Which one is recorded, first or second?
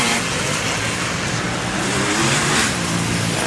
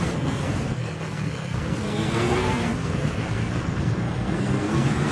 first